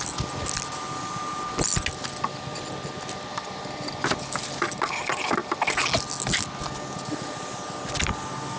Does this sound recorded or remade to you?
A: recorded